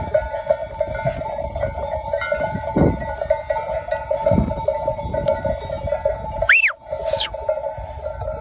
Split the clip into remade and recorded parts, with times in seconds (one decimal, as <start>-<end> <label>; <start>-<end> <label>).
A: 0.0-8.4 recorded